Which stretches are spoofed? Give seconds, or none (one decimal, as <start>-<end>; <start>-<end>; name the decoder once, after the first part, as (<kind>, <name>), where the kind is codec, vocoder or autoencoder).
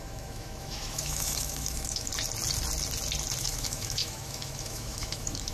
0.0-2.1 (autoencoder, DAC-VAE); 3.4-5.5